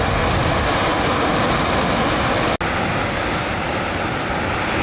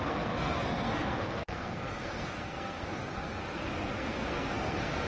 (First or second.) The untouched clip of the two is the first